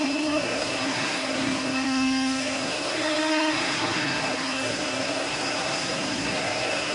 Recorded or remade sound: remade